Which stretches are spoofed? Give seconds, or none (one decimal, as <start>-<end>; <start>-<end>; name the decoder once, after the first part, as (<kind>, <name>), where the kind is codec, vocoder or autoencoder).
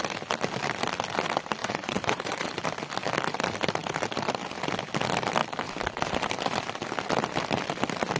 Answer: 1.6-2.5 (vocoder, Vocos)